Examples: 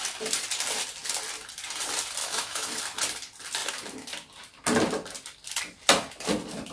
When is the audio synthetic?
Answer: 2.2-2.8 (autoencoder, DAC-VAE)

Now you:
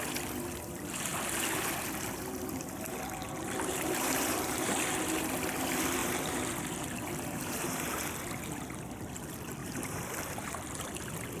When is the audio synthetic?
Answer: 3.2-4.7 (vocoder, BigVGAN v2); 6.0-8.1; 9.6-10.2

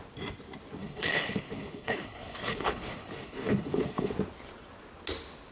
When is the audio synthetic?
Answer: 0.8-4.1 (codec, HILCodec)

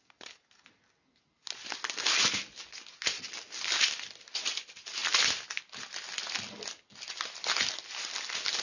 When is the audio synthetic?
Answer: none